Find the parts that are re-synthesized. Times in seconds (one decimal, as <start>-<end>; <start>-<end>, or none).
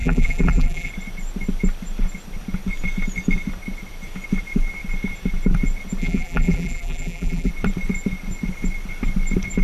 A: 0.0-0.9; 6.0-7.5